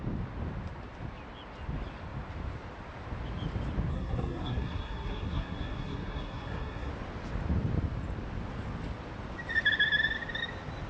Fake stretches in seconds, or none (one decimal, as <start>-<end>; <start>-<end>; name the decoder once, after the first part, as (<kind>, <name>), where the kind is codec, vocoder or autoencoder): 3.9-6.9 (codec, SNAC)